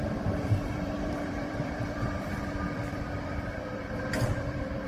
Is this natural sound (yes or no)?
no